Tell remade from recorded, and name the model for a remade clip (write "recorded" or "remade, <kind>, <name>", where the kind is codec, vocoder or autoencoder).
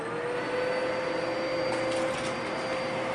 recorded